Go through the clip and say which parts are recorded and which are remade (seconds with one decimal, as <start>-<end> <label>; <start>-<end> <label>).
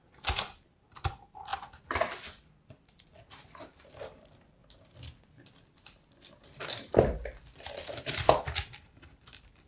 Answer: 0.0-9.7 recorded